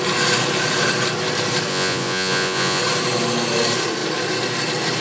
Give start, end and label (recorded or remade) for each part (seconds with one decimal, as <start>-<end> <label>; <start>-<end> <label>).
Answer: 0.0-1.7 recorded; 1.7-2.8 remade; 2.8-5.0 recorded